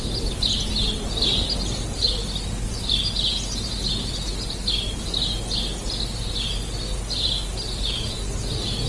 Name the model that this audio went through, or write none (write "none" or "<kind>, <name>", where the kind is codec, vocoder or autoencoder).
none